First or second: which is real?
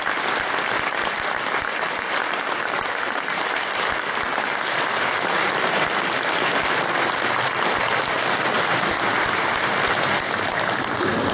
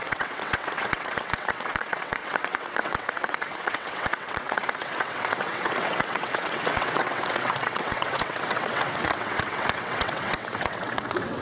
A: first